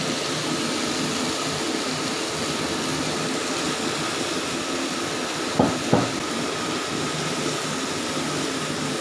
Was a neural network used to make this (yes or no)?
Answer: no